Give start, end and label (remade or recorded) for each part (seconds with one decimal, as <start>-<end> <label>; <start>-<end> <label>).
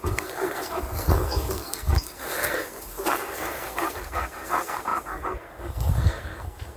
0.0-6.8 remade